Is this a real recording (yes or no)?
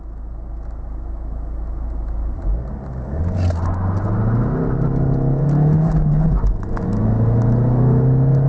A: yes